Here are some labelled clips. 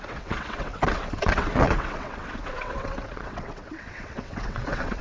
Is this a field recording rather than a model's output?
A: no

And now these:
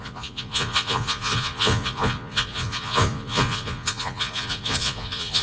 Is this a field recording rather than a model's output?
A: no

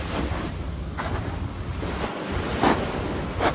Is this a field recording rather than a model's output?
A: yes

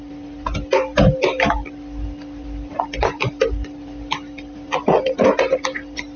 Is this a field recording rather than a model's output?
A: yes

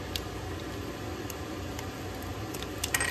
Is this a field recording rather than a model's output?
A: yes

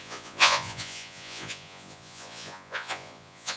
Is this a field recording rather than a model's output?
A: no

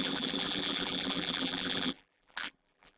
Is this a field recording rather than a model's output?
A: no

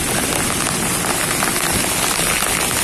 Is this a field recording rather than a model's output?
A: yes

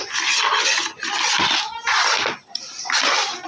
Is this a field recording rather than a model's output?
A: yes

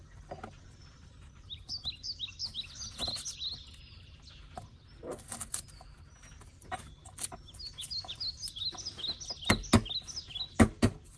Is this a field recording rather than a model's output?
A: yes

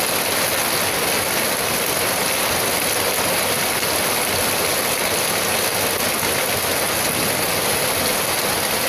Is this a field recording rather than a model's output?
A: yes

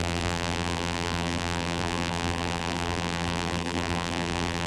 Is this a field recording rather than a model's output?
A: no